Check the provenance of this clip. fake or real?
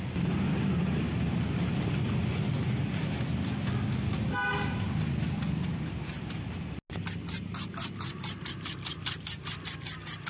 real